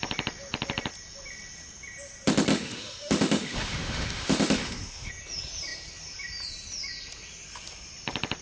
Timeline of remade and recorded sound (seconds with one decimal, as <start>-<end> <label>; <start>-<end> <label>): 0.0-2.5 recorded; 2.5-5.1 remade; 5.1-8.4 recorded

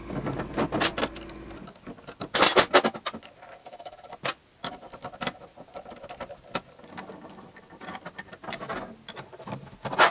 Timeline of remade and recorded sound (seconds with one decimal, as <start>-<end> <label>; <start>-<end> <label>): 0.0-0.6 remade; 0.6-3.6 recorded; 3.6-4.1 remade; 4.1-10.1 recorded

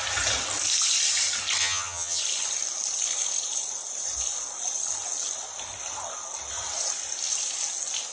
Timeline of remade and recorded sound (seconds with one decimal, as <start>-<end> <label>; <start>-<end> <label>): 0.0-1.6 recorded; 1.6-2.2 remade; 2.2-8.1 recorded